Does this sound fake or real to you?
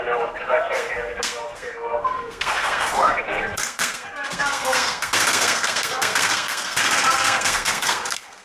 fake